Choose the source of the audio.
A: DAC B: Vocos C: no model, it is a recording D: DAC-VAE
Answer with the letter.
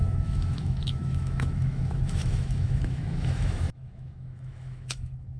D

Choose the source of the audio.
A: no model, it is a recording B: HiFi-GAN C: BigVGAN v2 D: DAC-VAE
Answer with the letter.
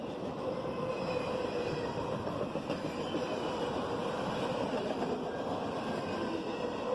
A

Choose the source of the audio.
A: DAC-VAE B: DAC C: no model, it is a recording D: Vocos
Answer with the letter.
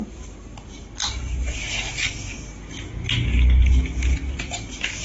C